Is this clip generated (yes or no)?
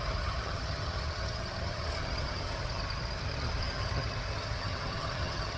yes